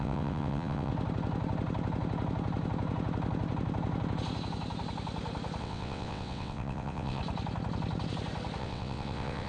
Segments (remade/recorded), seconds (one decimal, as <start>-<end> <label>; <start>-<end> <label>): 0.0-0.9 remade; 0.9-5.6 recorded; 5.6-7.2 remade; 7.2-8.6 recorded; 8.6-9.5 remade